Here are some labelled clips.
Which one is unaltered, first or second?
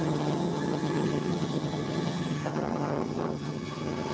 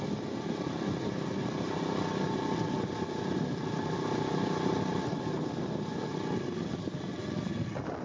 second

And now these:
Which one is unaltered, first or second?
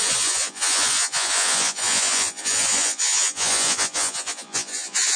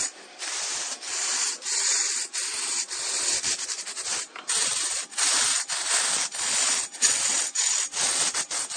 second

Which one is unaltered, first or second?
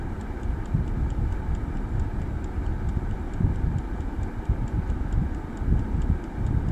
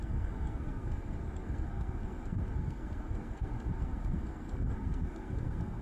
first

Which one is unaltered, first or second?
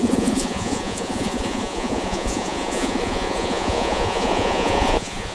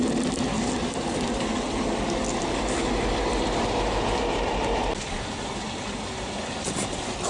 second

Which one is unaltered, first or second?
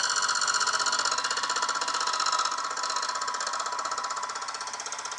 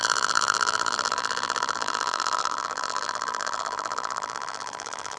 first